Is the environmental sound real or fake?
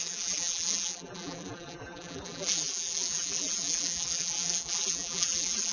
fake